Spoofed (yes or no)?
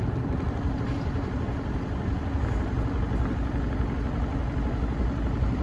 no